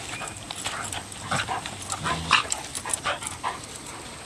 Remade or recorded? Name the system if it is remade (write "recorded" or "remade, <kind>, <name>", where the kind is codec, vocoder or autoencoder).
remade, vocoder, BigVGAN v2